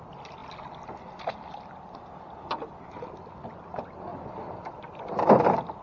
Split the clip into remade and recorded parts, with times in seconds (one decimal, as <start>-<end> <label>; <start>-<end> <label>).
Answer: 0.0-5.8 recorded